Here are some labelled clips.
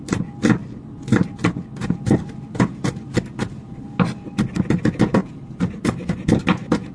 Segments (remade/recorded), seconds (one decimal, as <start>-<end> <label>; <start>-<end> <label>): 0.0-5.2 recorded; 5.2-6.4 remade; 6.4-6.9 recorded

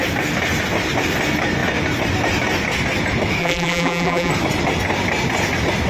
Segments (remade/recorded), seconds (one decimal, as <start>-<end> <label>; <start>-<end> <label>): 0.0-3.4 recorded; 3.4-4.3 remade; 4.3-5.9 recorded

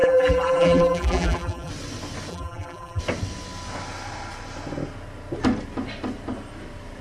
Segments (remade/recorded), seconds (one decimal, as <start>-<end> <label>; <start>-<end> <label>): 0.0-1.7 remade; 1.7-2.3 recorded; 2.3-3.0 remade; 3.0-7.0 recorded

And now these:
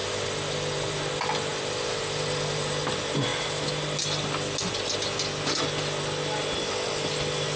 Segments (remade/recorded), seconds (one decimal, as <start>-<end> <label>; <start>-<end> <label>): 0.0-1.1 remade; 1.1-1.5 recorded; 1.5-2.8 remade; 2.8-7.6 recorded